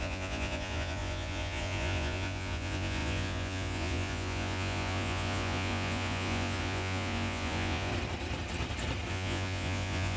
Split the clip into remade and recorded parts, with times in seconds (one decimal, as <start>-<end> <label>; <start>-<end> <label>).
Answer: 0.0-7.9 remade; 7.9-9.1 recorded; 9.1-10.2 remade